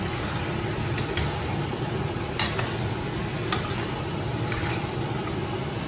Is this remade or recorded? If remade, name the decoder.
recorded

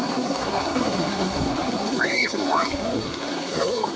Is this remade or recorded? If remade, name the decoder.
remade, codec, SNAC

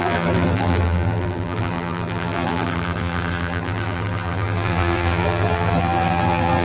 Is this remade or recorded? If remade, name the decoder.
remade, vocoder, BigVGAN v2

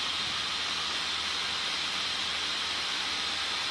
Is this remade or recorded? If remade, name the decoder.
recorded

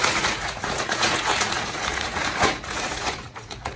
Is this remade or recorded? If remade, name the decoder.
remade, vocoder, Vocos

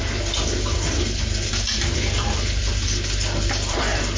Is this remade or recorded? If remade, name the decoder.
remade, vocoder, BigVGAN v2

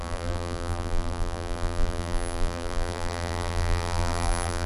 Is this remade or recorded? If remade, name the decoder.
remade, vocoder, BigVGAN v2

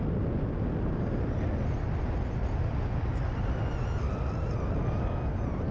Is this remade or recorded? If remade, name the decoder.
recorded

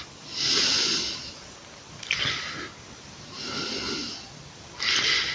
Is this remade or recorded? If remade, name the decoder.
recorded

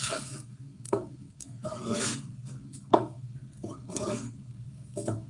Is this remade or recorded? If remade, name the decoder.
remade, codec, SNAC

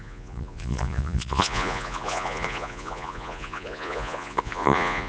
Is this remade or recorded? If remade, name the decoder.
remade, vocoder, Vocos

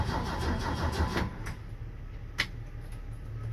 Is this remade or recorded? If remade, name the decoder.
recorded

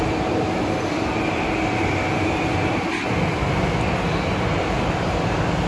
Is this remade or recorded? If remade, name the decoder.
recorded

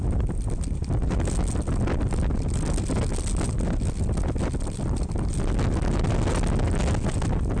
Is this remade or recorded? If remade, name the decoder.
recorded